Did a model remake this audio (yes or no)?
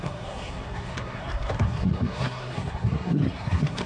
yes